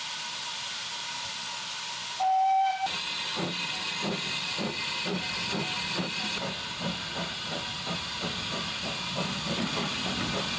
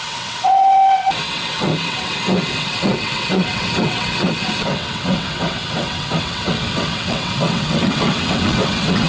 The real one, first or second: first